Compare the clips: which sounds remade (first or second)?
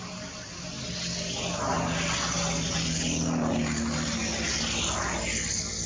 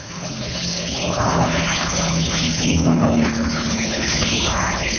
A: second